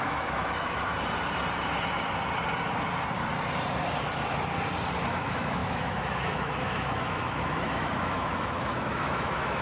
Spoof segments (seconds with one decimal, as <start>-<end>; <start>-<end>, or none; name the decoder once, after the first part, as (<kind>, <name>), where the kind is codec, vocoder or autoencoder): 0.0-0.9 (autoencoder, DAC-VAE); 5.1-9.6